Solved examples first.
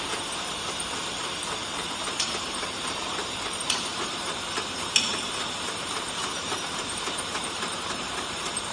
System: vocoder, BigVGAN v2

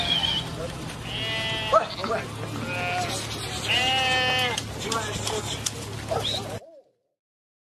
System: none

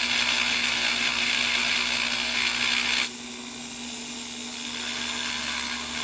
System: none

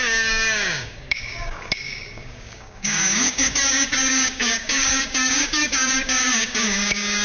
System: codec, DAC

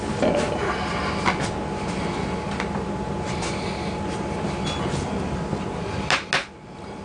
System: none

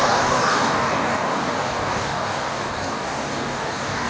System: codec, DAC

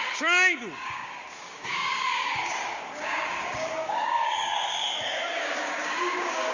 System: codec, DAC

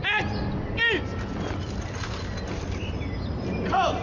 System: none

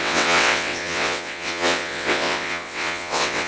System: vocoder, WaveNeXt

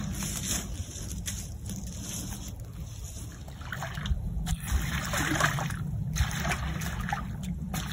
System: none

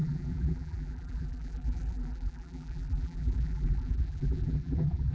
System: vocoder, BigVGAN v2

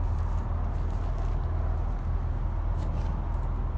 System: none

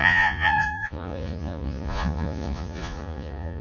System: vocoder, Vocos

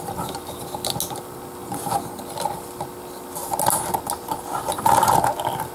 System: none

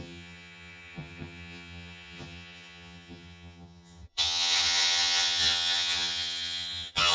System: vocoder, HiFi-GAN